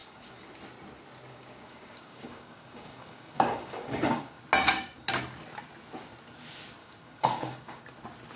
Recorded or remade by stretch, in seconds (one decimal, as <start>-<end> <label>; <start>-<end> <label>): 0.0-0.5 remade; 0.5-1.3 recorded; 1.3-4.4 remade; 4.4-6.8 recorded; 6.8-7.8 remade; 7.8-8.4 recorded